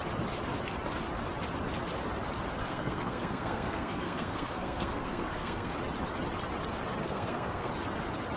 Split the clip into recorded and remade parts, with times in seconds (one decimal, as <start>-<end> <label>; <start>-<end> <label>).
0.0-2.6 recorded; 2.6-5.7 remade; 5.7-7.0 recorded; 7.0-7.7 remade; 7.7-8.4 recorded